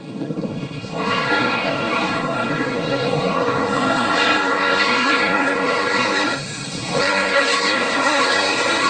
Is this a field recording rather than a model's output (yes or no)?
no